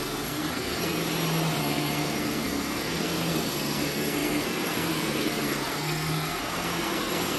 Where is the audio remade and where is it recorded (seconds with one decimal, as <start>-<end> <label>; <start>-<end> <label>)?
0.0-1.0 remade; 1.0-1.6 recorded; 1.6-7.4 remade

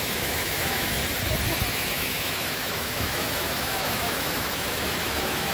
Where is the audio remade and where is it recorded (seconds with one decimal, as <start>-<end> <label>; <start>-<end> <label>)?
0.0-1.0 remade; 1.0-1.7 recorded; 1.7-5.5 remade

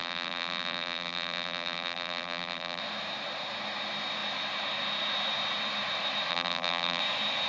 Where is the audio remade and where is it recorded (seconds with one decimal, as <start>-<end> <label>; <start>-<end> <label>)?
0.0-2.8 remade; 2.8-6.3 recorded; 6.3-7.0 remade; 7.0-7.5 recorded

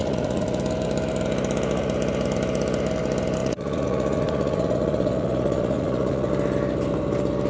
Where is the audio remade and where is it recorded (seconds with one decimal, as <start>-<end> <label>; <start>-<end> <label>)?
0.0-0.6 remade; 0.6-3.4 recorded; 3.4-6.3 remade; 6.3-7.5 recorded

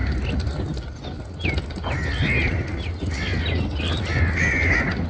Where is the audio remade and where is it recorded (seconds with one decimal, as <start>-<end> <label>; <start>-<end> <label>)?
0.0-5.1 recorded

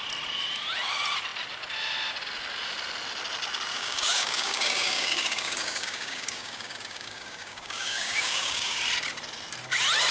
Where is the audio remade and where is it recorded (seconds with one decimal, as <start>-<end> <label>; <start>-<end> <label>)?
0.0-3.7 recorded; 3.7-8.8 remade; 8.8-10.1 recorded

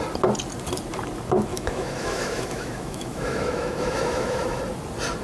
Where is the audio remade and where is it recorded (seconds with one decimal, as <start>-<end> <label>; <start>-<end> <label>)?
0.0-1.5 recorded; 1.5-4.6 remade; 4.6-5.2 recorded